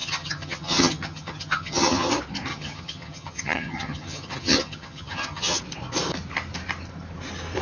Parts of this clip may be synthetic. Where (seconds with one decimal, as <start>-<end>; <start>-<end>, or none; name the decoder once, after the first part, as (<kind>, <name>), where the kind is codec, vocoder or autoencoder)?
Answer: 0.0-2.1 (vocoder, HiFi-GAN); 2.5-5.6